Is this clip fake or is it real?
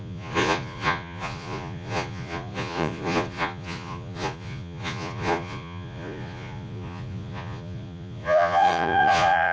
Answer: fake